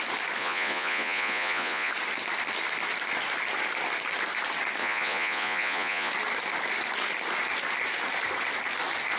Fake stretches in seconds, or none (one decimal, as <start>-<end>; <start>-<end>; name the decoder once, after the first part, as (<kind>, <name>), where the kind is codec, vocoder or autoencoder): 0.4-1.9 (vocoder, Vocos); 4.8-6.1